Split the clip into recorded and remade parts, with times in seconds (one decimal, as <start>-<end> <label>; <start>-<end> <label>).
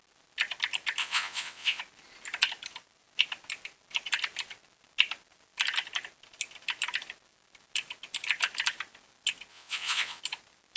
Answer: 0.0-1.0 recorded; 1.0-1.8 remade; 1.8-9.5 recorded; 9.5-10.2 remade; 10.2-10.8 recorded